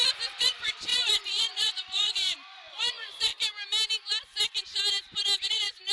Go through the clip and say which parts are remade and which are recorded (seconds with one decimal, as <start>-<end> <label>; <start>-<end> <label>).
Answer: 0.0-3.3 remade; 3.3-5.5 recorded; 5.5-5.9 remade